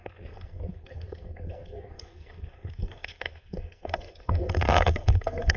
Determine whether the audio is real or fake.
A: fake